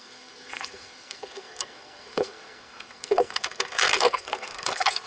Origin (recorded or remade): remade